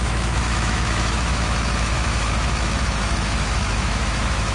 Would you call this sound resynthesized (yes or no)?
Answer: yes